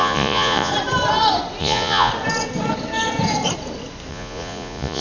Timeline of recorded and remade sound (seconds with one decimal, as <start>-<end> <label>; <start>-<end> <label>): 0.0-0.7 remade; 0.7-1.6 recorded; 1.6-2.1 remade; 2.1-4.1 recorded; 4.1-5.0 remade